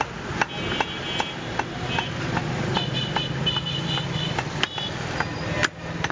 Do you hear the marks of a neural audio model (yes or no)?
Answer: no